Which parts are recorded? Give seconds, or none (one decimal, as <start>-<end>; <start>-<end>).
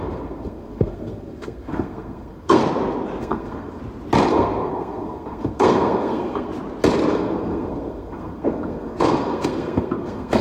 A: 2.6-3.2; 3.8-4.3; 6.5-7.1